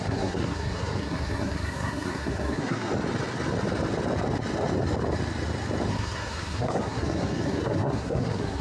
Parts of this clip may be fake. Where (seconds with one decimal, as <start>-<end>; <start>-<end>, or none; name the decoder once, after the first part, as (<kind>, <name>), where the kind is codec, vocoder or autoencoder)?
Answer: 0.0-2.9 (codec, SNAC); 5.9-8.6